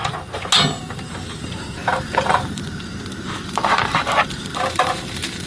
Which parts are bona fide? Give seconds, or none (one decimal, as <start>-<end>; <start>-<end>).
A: 0.0-0.8